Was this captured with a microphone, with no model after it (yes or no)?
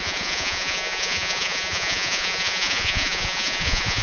no